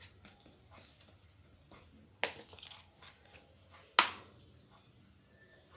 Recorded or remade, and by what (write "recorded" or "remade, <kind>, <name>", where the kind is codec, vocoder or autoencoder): recorded